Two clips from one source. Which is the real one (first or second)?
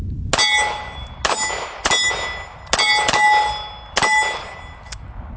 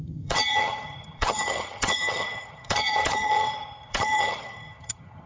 first